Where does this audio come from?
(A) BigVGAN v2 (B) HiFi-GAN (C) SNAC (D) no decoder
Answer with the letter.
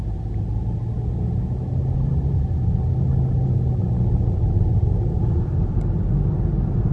D